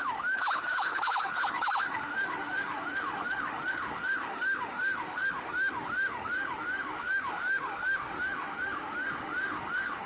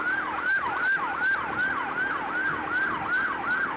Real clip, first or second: second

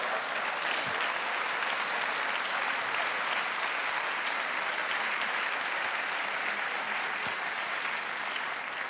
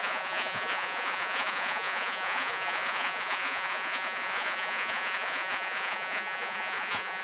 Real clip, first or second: first